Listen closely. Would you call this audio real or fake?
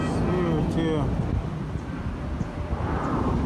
real